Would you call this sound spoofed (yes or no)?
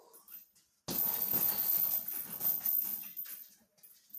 no